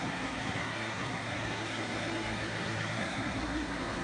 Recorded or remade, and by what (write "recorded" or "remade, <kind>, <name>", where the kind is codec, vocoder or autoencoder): remade, codec, SNAC